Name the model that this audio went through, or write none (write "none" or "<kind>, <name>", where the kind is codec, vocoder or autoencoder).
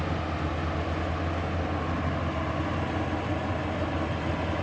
none